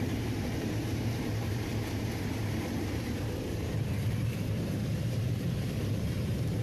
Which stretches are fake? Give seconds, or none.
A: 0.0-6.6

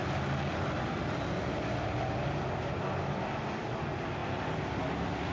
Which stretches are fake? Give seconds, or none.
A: none

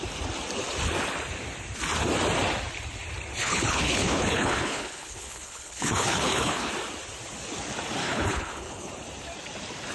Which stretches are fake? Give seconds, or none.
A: 3.4-6.7; 8.0-8.9

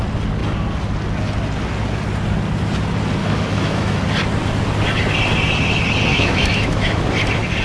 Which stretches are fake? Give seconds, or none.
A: 3.2-4.0; 6.1-7.0

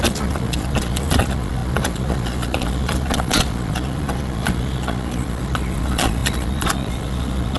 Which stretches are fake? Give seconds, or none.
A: 0.0-7.6